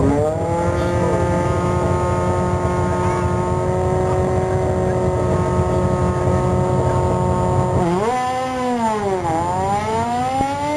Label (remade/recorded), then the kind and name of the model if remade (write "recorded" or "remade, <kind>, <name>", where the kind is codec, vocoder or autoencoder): recorded